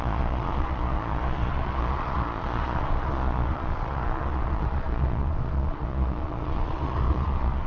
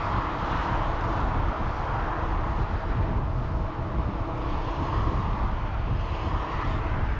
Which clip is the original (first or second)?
second